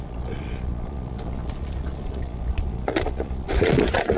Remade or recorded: remade